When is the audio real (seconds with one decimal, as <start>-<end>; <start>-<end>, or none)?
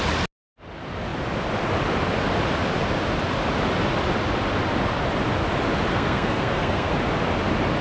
0.0-5.9; 6.9-7.8